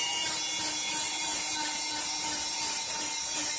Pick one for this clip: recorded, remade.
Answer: recorded